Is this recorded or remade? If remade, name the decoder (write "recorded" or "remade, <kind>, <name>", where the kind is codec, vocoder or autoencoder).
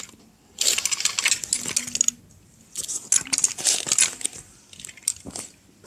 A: recorded